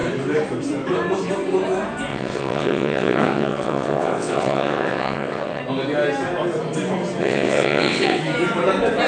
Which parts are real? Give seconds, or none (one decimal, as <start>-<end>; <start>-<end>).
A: 0.0-2.1; 5.6-7.2; 8.2-9.1